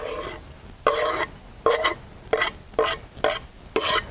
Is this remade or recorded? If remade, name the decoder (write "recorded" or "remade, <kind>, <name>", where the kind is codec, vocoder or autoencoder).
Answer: recorded